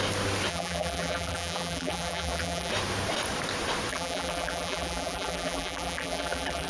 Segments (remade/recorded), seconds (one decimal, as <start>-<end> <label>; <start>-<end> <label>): 0.0-0.5 recorded; 0.5-2.7 remade; 2.7-3.9 recorded; 3.9-6.7 remade